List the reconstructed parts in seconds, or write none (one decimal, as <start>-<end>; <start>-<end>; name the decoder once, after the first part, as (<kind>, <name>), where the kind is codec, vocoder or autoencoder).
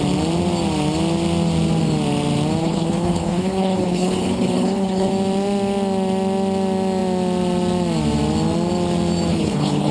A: 2.6-5.1 (codec, HILCodec); 9.3-9.9